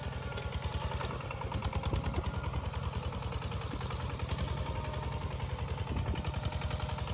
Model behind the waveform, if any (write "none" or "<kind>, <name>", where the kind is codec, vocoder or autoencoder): none